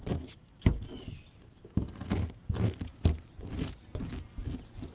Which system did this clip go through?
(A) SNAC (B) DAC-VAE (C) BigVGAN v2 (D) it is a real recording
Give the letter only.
D